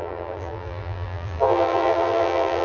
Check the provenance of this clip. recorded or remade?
remade